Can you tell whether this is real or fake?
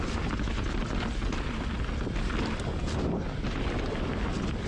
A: real